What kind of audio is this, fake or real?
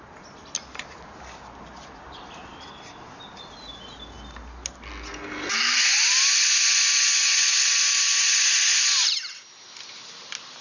real